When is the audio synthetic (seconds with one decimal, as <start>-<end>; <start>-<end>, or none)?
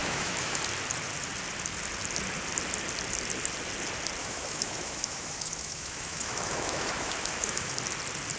0.0-0.6; 4.2-7.7